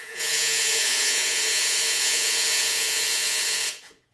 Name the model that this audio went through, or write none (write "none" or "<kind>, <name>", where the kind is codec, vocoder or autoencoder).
vocoder, Vocos